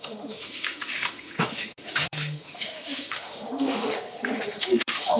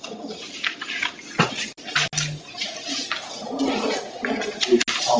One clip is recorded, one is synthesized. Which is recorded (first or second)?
second